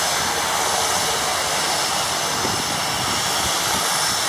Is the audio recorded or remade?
recorded